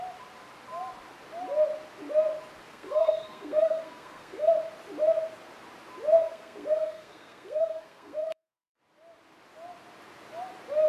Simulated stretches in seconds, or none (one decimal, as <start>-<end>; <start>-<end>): 2.7-4.5; 6.2-8.8